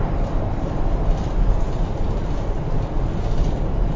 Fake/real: real